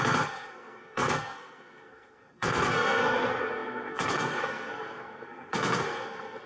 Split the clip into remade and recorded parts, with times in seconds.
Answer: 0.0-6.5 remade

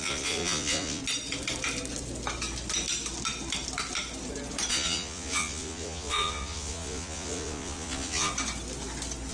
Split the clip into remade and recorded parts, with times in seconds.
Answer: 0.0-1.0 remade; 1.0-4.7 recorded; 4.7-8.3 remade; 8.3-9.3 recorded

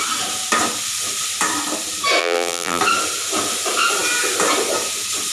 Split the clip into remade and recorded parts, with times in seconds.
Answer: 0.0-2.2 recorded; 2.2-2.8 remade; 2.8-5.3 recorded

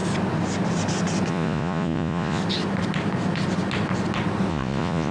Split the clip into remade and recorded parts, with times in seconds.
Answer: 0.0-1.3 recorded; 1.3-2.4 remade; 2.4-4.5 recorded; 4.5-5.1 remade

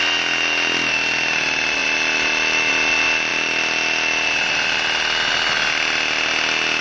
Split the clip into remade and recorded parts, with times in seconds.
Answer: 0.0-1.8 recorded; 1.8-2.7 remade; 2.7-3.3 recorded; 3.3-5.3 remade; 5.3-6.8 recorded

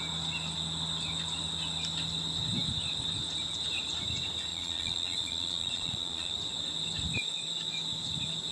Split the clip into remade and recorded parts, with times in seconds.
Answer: 0.0-4.5 recorded; 4.5-6.3 remade; 6.3-8.5 recorded

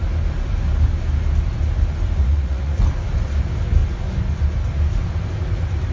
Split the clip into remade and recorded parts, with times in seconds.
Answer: 0.0-2.2 recorded; 2.2-2.8 remade; 2.8-5.9 recorded